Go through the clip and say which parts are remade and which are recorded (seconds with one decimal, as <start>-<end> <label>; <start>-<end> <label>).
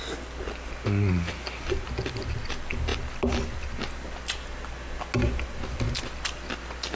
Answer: 0.0-7.0 recorded